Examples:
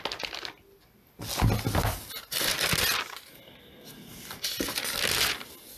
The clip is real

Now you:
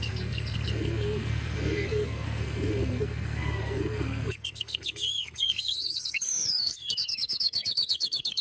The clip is fake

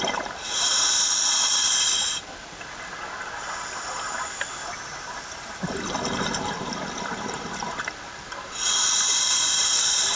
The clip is real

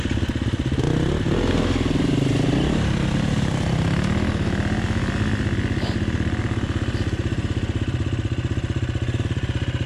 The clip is real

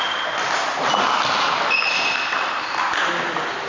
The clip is real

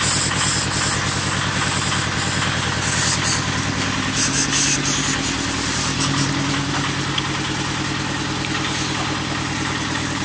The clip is real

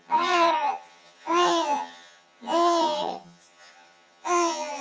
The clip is fake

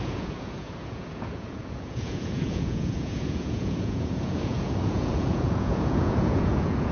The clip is fake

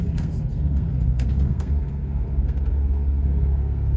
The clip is fake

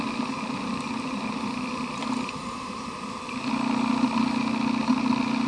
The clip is real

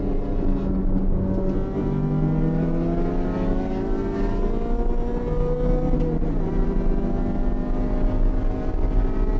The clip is real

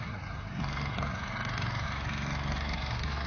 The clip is fake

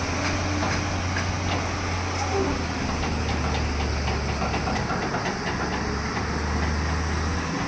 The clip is real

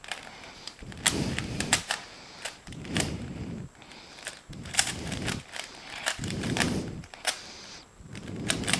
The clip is fake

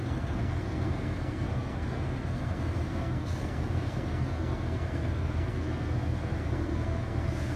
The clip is fake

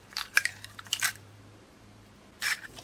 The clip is fake